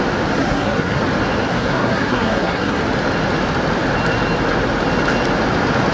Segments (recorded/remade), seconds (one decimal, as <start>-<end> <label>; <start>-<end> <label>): 0.0-0.4 recorded; 0.4-1.0 remade; 1.0-1.5 recorded; 1.5-2.8 remade; 2.8-5.9 recorded